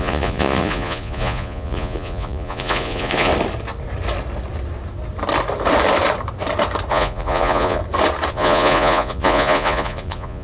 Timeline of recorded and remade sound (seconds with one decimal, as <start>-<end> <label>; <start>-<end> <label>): 0.0-3.3 remade; 3.3-6.9 recorded; 6.9-7.8 remade; 7.8-8.3 recorded; 8.3-10.4 remade